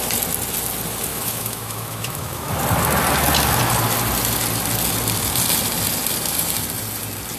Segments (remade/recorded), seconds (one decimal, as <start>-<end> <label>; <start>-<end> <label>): 0.0-1.1 recorded; 1.1-2.5 remade; 2.5-7.4 recorded